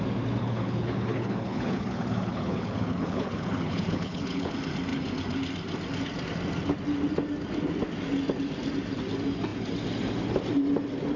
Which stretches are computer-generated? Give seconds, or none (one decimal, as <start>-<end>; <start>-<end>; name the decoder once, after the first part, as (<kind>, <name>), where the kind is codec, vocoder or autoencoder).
0.4-4.5 (codec, HILCodec)